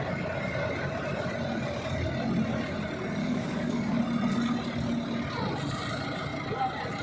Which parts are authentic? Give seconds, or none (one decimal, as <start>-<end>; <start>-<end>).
0.0-3.2; 4.0-7.0